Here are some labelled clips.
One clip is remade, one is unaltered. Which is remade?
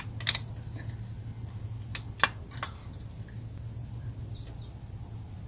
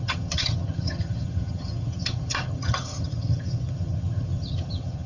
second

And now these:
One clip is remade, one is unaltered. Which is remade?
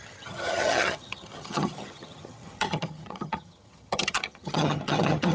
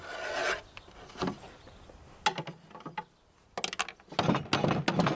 first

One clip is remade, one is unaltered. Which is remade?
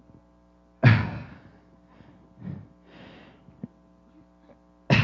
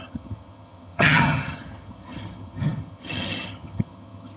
second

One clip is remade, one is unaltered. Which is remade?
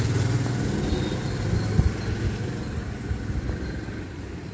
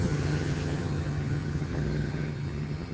second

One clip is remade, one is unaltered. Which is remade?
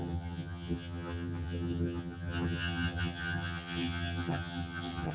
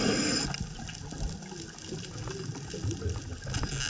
first